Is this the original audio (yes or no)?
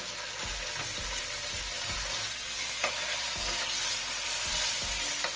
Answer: yes